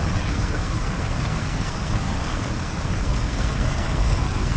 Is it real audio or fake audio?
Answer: fake